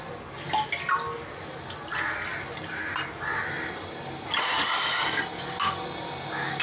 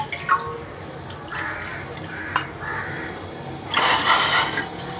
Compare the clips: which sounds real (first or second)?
first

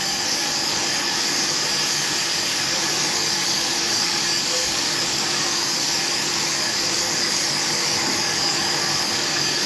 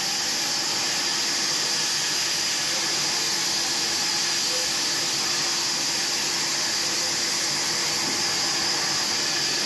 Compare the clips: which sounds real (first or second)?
second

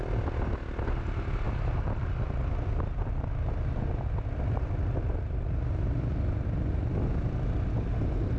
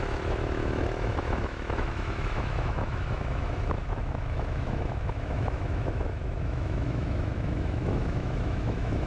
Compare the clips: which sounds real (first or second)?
first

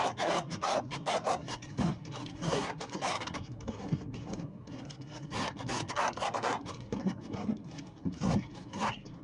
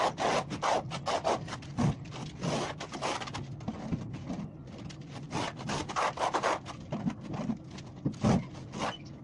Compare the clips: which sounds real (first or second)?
second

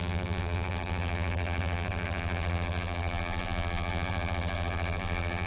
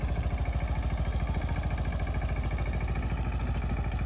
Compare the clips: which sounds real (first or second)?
second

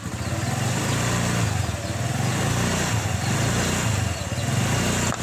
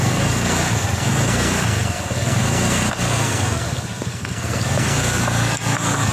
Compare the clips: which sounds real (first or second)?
first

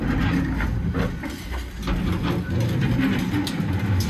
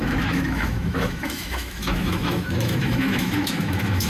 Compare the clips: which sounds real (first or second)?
first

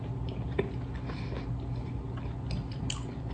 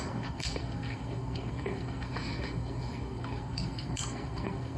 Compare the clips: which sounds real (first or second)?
first